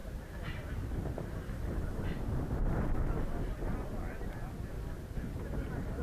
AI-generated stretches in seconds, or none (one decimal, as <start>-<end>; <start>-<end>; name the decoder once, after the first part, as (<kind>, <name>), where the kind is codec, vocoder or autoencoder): none